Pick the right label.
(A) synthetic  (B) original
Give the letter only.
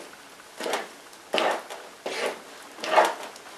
B